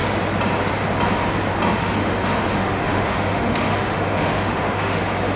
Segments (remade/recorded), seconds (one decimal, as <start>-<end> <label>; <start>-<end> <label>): 0.0-1.8 recorded; 1.8-5.0 remade; 5.0-5.4 recorded